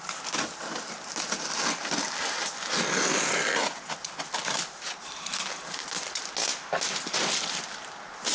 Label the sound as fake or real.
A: real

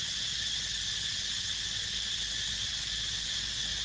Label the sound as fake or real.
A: real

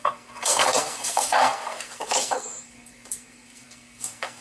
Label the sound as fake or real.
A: fake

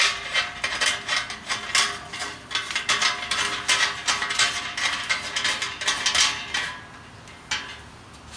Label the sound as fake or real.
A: real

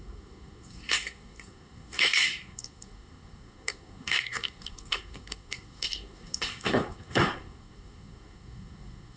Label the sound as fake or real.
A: fake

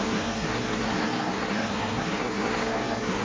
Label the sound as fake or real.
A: fake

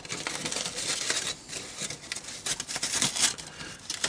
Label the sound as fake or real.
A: real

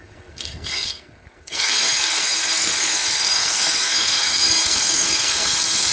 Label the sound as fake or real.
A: fake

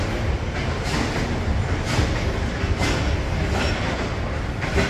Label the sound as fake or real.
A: real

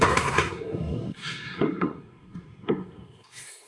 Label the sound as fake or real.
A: fake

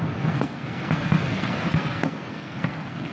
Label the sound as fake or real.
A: fake